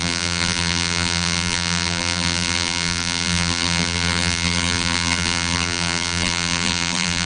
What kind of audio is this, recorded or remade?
remade